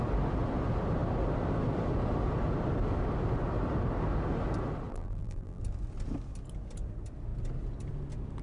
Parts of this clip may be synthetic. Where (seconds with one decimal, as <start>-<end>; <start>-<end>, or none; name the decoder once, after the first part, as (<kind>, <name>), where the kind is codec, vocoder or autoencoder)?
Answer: 4.9-5.6 (vocoder, BigVGAN v2)